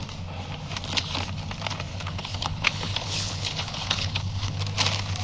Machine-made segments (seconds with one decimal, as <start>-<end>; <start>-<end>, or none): 1.9-4.6